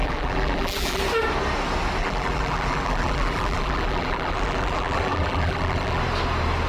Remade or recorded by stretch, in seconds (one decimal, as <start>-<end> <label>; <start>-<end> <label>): 0.0-1.0 remade; 1.0-2.0 recorded; 2.0-6.0 remade; 6.0-6.7 recorded

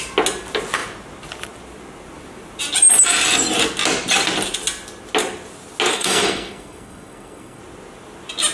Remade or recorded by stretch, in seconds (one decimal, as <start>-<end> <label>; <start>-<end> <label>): 0.0-5.9 recorded; 5.9-7.6 remade; 7.6-8.5 recorded

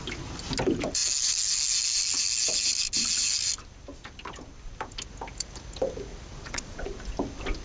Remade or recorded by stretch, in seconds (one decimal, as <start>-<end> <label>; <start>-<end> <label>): 0.0-6.1 recorded; 6.1-7.0 remade; 7.0-7.6 recorded

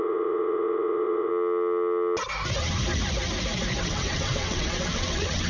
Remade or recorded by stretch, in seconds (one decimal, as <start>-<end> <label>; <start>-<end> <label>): 0.0-1.3 remade; 1.3-3.8 recorded; 3.8-5.5 remade

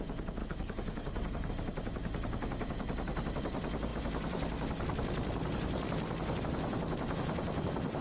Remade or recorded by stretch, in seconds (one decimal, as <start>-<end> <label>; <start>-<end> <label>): 0.0-0.4 recorded; 0.4-1.5 remade; 1.5-8.0 recorded

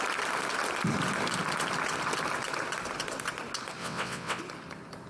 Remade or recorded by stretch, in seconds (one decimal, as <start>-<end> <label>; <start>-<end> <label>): 0.0-3.8 recorded; 3.8-4.4 remade; 4.4-5.1 recorded

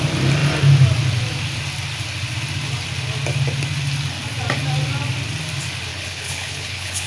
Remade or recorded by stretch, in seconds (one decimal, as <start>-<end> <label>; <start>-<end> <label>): 0.0-5.9 recorded; 5.9-7.1 remade

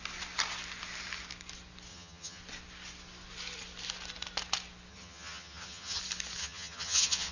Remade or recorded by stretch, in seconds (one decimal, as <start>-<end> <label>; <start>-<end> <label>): 0.0-1.9 recorded; 1.9-2.4 remade; 2.4-4.9 recorded; 4.9-6.0 remade; 6.0-6.4 recorded; 6.4-7.3 remade